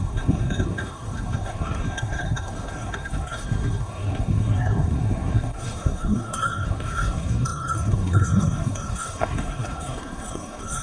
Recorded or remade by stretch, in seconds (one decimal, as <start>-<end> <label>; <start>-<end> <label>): 0.0-10.8 remade